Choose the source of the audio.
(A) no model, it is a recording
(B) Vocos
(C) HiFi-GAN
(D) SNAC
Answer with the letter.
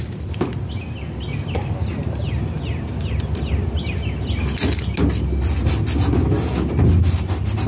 A